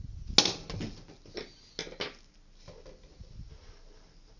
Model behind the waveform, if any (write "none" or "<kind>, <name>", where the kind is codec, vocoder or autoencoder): none